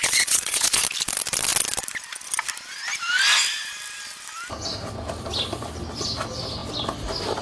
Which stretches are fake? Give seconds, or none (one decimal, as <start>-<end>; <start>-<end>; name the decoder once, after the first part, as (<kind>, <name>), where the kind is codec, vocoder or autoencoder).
0.0-0.8 (vocoder, Vocos)